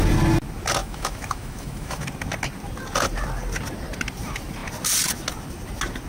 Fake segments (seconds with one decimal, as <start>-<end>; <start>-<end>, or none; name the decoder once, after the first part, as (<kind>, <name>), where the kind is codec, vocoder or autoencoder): 0.8-2.0 (autoencoder, DAC-VAE)